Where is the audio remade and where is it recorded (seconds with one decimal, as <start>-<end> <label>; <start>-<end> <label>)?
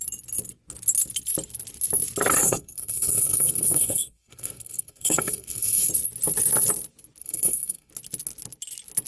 0.0-2.4 recorded; 2.4-5.9 remade; 5.9-7.2 recorded; 7.2-7.9 remade; 7.9-9.1 recorded